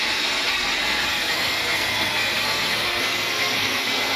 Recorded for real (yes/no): no